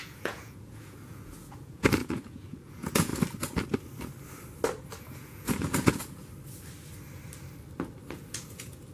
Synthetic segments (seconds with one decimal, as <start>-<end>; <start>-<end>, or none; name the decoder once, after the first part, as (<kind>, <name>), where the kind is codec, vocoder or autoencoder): 0.0-3.1 (vocoder, Vocos); 5.1-6.2; 8.1-8.9